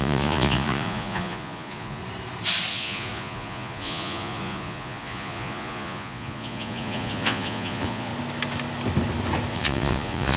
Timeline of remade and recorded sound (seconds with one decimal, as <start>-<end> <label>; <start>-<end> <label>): 0.0-2.0 remade; 2.0-2.7 recorded; 2.7-8.1 remade; 8.1-9.5 recorded; 9.5-10.4 remade

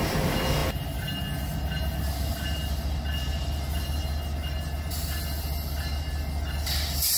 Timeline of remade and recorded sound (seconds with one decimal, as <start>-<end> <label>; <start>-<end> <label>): 0.0-7.2 recorded

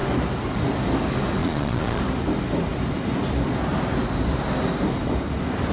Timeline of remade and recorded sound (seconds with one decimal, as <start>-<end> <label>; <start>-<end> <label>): 0.0-1.4 recorded; 1.4-2.0 remade; 2.0-5.7 recorded